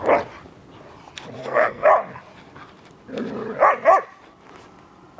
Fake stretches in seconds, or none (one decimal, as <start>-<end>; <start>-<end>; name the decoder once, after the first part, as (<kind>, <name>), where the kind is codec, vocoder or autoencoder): 1.4-1.9 (codec, SNAC)